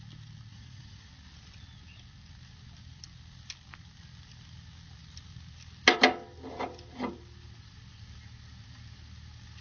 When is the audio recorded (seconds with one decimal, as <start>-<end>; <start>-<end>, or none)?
0.0-0.5; 1.1-9.6